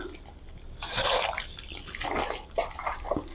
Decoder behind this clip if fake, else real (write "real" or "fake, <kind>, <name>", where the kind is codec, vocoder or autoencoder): real